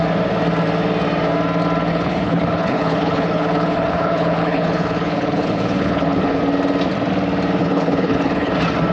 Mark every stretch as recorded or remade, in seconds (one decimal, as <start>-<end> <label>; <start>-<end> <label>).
0.0-1.9 recorded; 1.9-6.4 remade; 6.4-7.6 recorded; 7.6-8.5 remade; 8.5-8.9 recorded